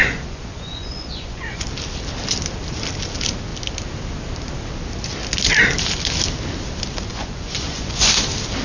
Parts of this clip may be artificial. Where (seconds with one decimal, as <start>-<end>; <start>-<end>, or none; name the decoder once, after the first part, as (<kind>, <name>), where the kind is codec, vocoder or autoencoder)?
0.0-1.6 (vocoder, Vocos); 7.1-8.1